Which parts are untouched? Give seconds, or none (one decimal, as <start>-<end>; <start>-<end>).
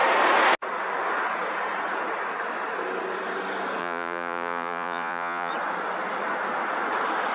0.0-3.8; 5.5-7.3